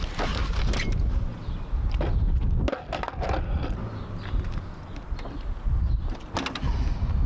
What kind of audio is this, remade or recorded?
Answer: recorded